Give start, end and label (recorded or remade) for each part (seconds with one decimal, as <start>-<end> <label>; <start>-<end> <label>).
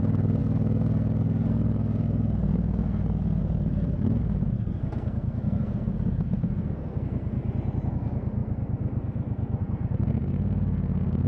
0.0-7.4 remade; 7.4-7.9 recorded; 7.9-11.3 remade